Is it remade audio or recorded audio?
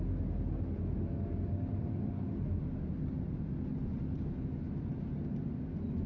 recorded